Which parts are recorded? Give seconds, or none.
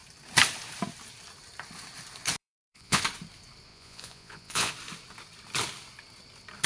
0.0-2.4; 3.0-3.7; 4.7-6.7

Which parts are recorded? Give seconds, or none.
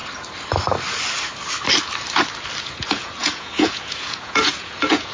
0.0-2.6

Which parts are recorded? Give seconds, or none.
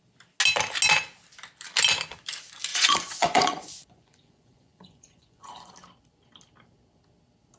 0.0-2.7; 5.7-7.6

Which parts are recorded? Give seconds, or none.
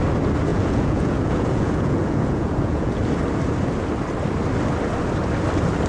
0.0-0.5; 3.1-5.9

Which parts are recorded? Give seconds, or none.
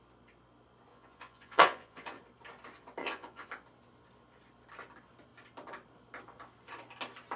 0.0-0.9; 2.2-3.0; 3.5-7.4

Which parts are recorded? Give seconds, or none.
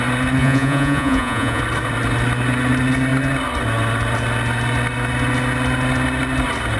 0.0-0.4; 1.6-6.8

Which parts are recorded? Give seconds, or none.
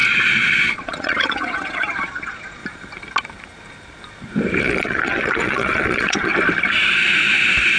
2.6-4.6; 6.3-7.8